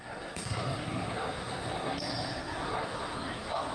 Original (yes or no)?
no